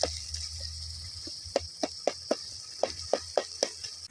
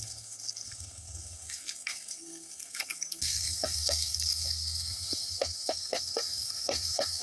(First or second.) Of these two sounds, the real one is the first